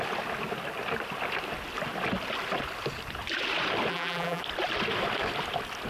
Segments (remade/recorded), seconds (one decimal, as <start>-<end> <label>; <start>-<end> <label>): 0.0-3.9 recorded; 3.9-4.4 remade; 4.4-5.9 recorded